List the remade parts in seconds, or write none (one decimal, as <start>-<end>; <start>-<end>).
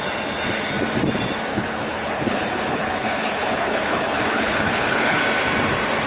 1.5-5.2